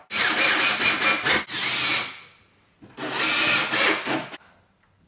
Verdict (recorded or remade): recorded